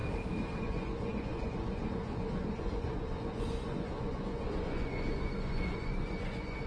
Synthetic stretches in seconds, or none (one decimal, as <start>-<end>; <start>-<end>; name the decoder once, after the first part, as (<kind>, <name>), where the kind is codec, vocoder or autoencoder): 0.6-6.7 (vocoder, Vocos)